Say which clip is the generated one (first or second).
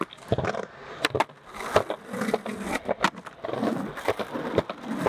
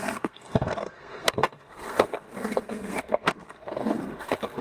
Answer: second